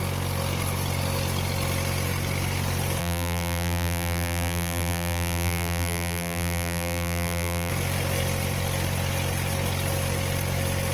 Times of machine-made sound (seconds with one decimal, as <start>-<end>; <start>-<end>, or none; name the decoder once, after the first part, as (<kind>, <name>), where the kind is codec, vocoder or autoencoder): 3.0-7.7 (vocoder, BigVGAN v2)